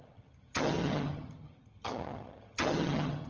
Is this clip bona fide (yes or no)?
no